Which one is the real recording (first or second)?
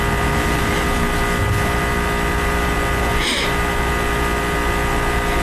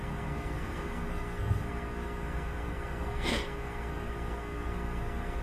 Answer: first